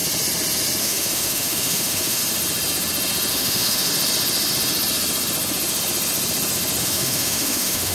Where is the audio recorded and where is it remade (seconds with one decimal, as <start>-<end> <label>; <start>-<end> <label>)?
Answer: 0.0-0.8 recorded; 0.8-2.2 remade; 2.2-3.3 recorded; 3.3-3.9 remade; 3.9-6.8 recorded; 6.8-7.9 remade